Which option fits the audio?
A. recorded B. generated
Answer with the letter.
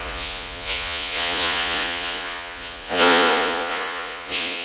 B